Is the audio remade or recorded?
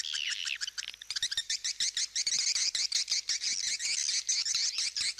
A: recorded